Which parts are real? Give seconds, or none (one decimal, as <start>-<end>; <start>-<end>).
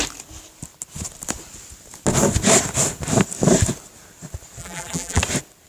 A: 0.0-4.6; 5.2-5.7